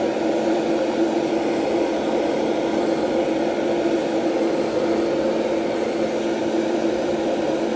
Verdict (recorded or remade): recorded